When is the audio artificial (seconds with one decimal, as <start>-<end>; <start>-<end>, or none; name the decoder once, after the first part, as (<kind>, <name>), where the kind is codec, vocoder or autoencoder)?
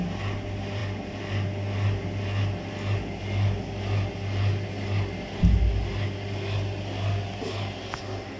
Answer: none